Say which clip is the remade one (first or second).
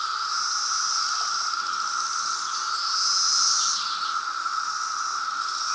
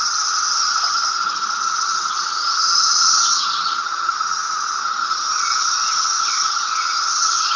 second